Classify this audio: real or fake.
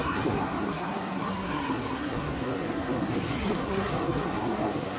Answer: fake